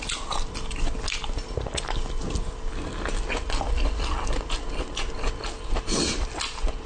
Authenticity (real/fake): real